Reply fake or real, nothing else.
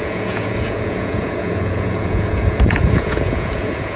fake